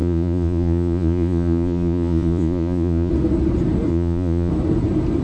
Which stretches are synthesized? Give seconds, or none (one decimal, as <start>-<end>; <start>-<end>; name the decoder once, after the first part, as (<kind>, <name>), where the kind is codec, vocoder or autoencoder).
0.0-3.1 (vocoder, Vocos); 3.9-4.5

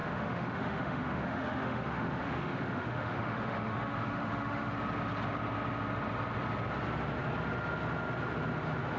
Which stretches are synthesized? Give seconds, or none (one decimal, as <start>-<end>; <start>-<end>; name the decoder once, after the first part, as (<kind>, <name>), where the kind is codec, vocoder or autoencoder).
0.0-4.7 (autoencoder, DAC-VAE)

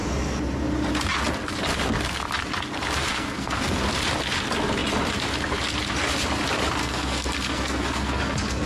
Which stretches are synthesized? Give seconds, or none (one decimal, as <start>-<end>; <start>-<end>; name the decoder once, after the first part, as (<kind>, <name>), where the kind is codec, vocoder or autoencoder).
3.0-3.8 (codec, SNAC); 6.8-8.7

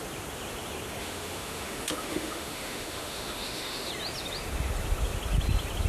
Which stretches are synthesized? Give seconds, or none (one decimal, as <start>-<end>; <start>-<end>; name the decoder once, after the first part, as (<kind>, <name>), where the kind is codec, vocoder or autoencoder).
1.0-3.9 (autoencoder, DAC-VAE)